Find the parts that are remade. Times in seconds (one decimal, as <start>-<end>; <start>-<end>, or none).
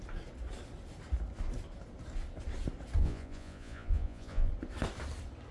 3.0-4.5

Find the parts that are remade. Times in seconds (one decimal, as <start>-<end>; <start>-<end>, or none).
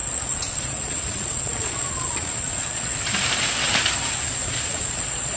0.0-2.9; 4.7-5.4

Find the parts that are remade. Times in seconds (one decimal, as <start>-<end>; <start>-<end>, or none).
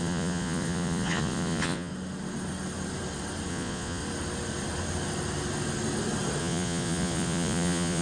0.0-1.9; 3.5-4.0; 6.4-8.0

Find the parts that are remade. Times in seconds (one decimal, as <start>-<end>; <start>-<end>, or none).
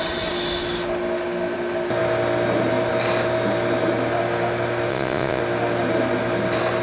4.9-5.4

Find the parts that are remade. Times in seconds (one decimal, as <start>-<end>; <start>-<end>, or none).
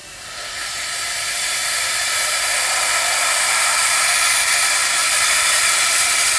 none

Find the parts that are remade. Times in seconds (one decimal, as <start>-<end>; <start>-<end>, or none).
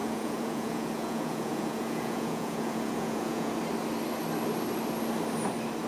0.0-3.5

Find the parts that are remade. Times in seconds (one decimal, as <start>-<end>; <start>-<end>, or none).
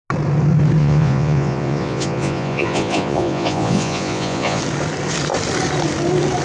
0.8-4.6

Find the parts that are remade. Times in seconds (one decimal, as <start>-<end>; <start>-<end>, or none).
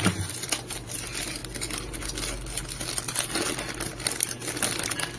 none